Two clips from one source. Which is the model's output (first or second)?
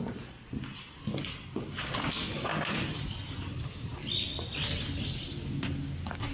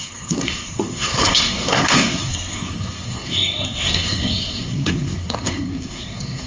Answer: second